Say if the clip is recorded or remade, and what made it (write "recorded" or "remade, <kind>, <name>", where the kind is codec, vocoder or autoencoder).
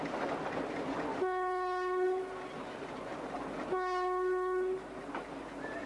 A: recorded